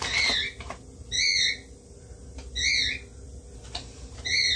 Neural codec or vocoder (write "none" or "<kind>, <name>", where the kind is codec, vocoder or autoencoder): none